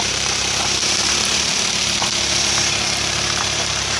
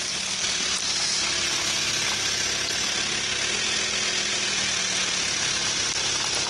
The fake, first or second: first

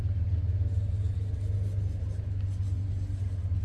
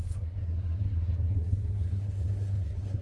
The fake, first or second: second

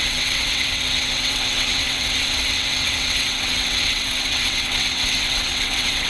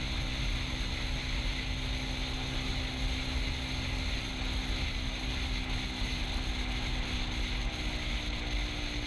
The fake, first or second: first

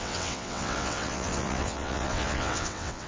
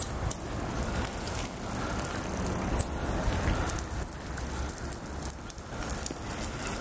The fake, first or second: first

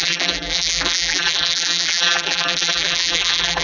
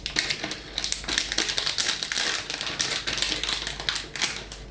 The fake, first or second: first